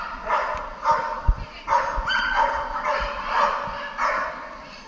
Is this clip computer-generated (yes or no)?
no